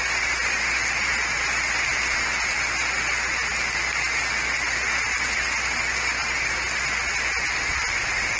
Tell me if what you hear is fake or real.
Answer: real